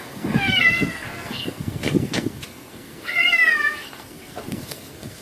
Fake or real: fake